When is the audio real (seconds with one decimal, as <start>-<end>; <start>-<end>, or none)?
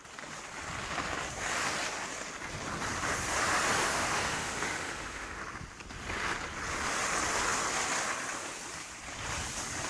0.0-3.9; 5.4-9.9